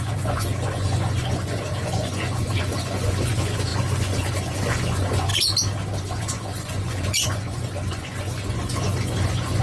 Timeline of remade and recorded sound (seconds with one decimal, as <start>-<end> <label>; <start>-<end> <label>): 0.0-5.3 remade; 5.3-6.0 recorded; 6.0-9.6 remade

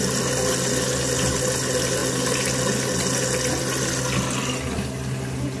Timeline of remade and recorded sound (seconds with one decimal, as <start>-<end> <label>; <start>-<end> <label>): 0.0-5.6 recorded

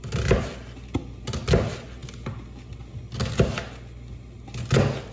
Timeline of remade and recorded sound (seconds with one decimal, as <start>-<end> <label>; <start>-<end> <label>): 0.0-5.1 recorded

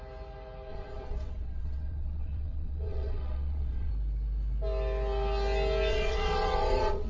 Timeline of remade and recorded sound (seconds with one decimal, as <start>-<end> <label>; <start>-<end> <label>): 0.0-0.7 recorded; 0.7-3.9 remade; 3.9-5.9 recorded; 5.9-7.1 remade